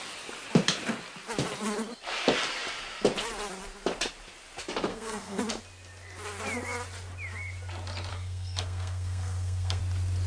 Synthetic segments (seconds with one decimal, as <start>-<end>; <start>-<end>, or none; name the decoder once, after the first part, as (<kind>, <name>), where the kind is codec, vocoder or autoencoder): 4.9-5.4 (codec, SNAC); 8.1-9.8